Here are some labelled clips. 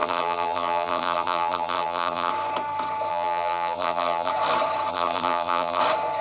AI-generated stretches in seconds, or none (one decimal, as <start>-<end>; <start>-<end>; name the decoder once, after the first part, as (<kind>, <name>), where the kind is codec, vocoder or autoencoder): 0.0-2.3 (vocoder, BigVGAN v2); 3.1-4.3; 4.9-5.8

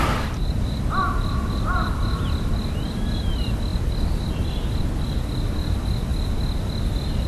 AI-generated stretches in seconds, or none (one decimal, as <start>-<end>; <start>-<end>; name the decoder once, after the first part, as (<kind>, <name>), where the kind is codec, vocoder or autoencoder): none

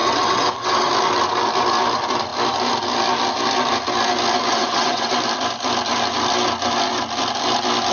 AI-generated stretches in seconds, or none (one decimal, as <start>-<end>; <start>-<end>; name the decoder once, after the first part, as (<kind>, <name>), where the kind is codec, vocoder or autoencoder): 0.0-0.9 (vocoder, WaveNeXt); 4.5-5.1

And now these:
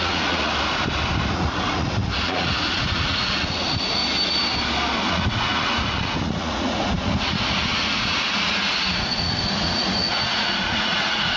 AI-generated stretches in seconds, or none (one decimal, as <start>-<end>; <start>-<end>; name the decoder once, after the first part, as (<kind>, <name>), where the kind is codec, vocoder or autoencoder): 0.0-0.5 (vocoder, Vocos); 1.3-4.0; 5.1-11.4